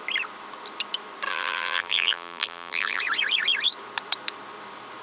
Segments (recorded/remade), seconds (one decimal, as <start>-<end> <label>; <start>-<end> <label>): 0.0-1.3 recorded; 1.3-3.0 remade; 3.0-5.0 recorded